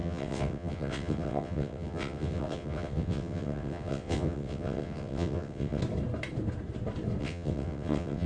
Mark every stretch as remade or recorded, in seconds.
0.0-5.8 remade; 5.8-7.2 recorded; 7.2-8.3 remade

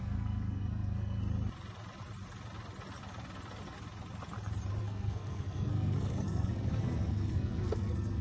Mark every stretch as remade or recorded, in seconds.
0.0-1.2 remade; 1.2-4.8 recorded; 4.8-8.2 remade